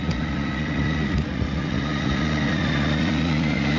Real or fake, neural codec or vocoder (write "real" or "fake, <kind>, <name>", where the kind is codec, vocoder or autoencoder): fake, vocoder, Vocos